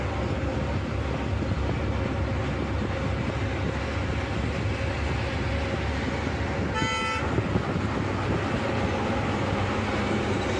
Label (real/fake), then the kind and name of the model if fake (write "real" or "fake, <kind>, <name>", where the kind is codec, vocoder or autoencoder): real